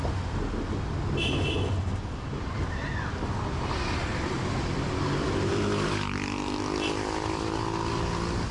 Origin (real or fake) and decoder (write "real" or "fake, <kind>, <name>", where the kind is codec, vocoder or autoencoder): real